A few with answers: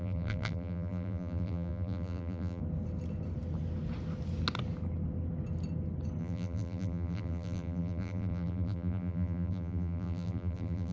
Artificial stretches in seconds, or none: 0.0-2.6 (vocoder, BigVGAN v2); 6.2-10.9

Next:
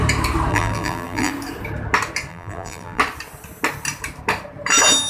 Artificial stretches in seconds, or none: 0.5-1.3 (vocoder, BigVGAN v2); 2.3-3.0

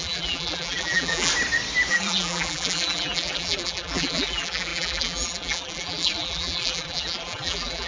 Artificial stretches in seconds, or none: 0.0-1.3 (vocoder, BigVGAN v2); 1.9-7.9

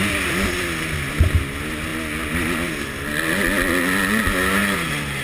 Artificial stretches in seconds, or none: none

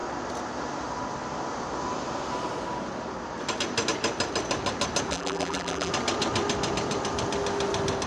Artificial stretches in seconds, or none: 5.1-5.9 (vocoder, BigVGAN v2)

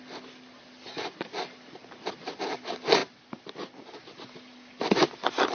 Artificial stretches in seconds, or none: none

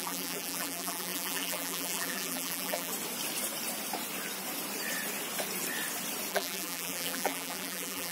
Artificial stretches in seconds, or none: 0.0-2.9 (vocoder, BigVGAN v2); 6.3-8.1

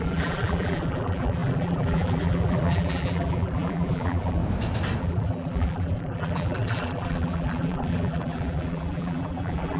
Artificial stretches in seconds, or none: 0.0-4.4 (vocoder, BigVGAN v2); 5.0-9.8